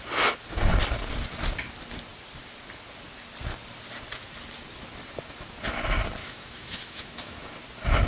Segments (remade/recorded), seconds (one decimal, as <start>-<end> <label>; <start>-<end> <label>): 0.0-6.2 recorded; 6.2-7.5 remade; 7.5-8.1 recorded